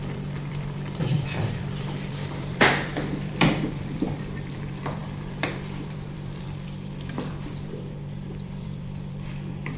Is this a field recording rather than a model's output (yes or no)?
no